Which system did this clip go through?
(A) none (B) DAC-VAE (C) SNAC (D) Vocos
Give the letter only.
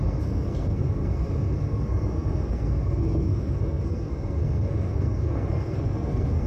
C